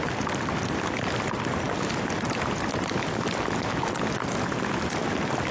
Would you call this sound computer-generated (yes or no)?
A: no